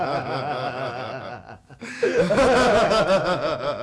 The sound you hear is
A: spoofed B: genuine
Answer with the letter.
A